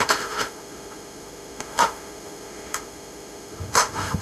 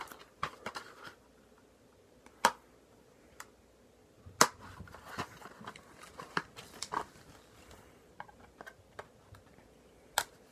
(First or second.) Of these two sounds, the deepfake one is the first